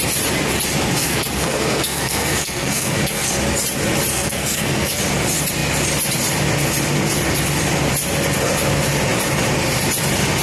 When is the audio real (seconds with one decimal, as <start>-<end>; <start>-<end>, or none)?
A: 0.0-1.0; 3.3-4.1; 5.0-10.4